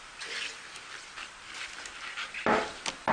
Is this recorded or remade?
recorded